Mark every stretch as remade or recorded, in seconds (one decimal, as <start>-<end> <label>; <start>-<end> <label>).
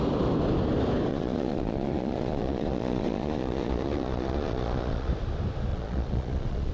0.0-1.1 recorded; 1.1-5.1 remade; 5.1-5.7 recorded; 5.7-6.7 remade